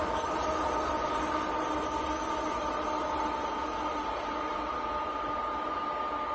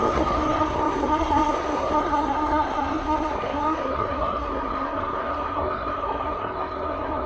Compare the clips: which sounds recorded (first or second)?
first